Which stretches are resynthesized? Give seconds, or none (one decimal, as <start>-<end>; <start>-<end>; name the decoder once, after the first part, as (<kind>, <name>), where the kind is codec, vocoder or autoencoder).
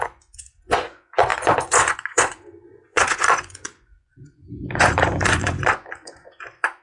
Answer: 0.0-6.8 (vocoder, Vocos)